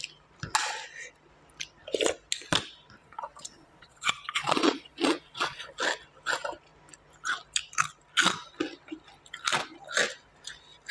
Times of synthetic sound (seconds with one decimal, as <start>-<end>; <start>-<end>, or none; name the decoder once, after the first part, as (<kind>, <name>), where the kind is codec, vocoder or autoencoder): 3.0-5.7 (vocoder, Vocos)